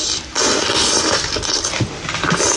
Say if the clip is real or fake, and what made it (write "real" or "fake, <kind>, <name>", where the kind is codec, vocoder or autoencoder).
real